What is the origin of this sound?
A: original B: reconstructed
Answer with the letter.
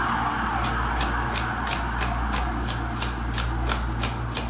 A